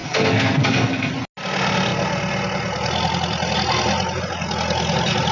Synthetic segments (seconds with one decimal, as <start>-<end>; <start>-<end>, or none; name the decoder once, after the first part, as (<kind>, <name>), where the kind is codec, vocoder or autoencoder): 0.0-1.1 (codec, SNAC)